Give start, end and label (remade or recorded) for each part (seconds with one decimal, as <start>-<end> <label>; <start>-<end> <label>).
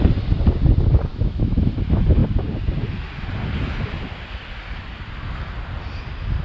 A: 0.0-1.1 recorded; 1.1-1.7 remade; 1.7-6.4 recorded